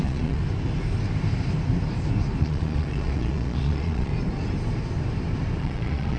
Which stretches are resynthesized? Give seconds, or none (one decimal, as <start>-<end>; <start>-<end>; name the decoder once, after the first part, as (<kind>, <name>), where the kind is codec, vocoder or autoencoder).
0.0-0.4 (vocoder, Vocos); 2.4-4.1; 5.6-6.2